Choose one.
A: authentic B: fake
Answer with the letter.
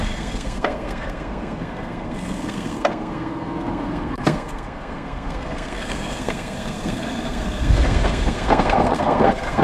B